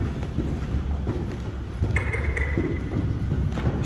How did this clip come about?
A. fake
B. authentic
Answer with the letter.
B